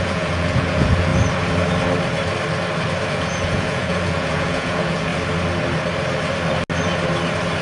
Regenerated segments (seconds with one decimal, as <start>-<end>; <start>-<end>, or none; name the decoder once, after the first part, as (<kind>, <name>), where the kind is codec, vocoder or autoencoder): 0.0-1.1 (vocoder, Vocos); 3.1-5.1